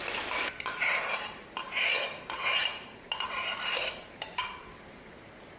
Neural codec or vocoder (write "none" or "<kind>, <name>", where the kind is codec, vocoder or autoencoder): vocoder, BigVGAN v2